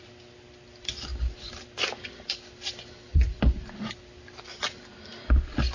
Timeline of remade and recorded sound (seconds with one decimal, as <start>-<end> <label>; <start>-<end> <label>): 0.0-1.1 recorded; 1.1-4.5 remade; 4.5-5.7 recorded